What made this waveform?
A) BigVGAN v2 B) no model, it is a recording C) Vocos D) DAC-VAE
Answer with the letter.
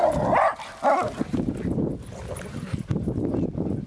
B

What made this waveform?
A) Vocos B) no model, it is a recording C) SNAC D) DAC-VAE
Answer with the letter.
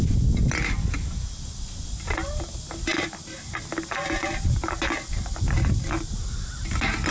B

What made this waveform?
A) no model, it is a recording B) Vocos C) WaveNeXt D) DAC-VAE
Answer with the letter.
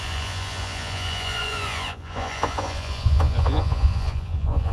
B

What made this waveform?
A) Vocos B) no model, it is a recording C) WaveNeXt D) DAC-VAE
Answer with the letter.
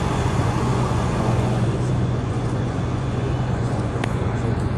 A